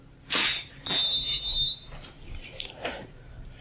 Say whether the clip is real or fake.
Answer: real